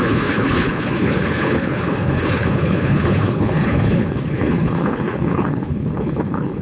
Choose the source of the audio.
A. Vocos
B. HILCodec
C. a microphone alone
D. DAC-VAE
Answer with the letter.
B